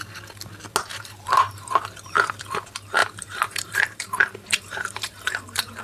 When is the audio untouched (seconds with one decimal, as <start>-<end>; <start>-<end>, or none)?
0.0-0.9; 1.7-3.0